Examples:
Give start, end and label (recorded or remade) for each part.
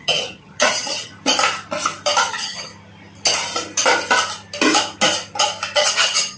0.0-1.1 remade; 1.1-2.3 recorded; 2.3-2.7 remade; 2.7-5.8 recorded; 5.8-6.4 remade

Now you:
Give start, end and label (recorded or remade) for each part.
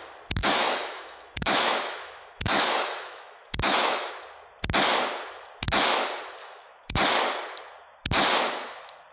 0.0-0.4 recorded; 0.4-4.1 remade; 4.1-6.4 recorded; 6.4-7.0 remade; 7.0-9.1 recorded